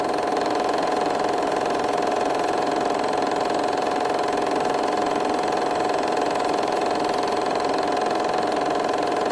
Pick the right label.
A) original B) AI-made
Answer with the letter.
B